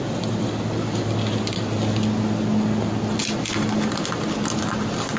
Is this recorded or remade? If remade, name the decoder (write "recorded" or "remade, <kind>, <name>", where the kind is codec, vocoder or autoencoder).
recorded